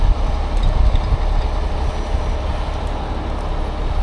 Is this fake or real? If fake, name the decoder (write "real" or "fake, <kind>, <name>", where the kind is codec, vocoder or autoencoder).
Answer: real